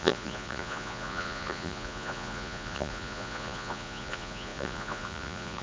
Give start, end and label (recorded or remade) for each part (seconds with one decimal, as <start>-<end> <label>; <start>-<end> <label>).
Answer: 0.0-5.6 remade